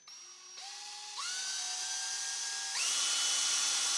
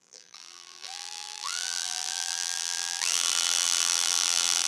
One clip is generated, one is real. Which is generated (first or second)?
second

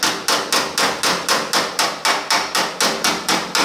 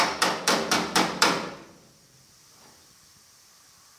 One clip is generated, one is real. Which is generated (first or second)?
second